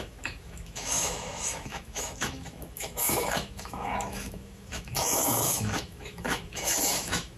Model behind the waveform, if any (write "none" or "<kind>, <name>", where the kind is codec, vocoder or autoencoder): autoencoder, DAC-VAE